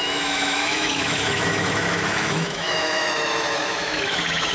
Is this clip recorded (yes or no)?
no